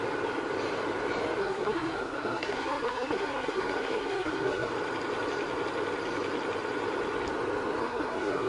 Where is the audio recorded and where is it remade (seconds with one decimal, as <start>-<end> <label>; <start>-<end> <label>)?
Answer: 0.0-1.4 recorded; 1.4-4.7 remade; 4.7-7.8 recorded; 7.8-8.5 remade